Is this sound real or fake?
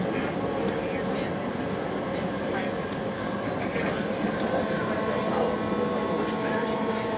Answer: real